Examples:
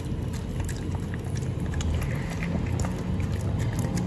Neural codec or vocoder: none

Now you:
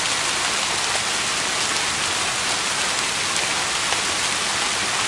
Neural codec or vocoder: none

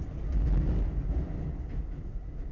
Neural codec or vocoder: none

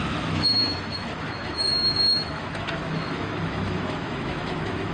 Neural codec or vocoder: autoencoder, DAC-VAE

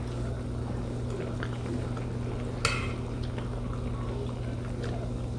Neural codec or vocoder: none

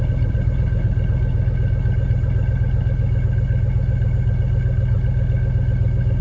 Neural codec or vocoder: none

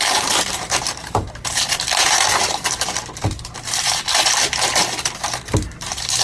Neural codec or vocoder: vocoder, BigVGAN v2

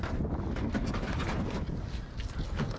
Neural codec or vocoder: none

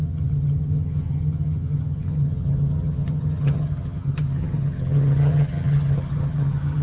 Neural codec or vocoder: vocoder, HiFi-GAN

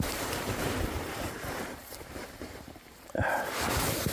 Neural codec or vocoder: vocoder, BigVGAN v2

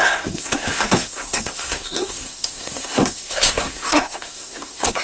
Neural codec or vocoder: codec, SNAC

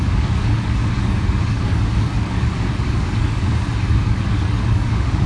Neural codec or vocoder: codec, DAC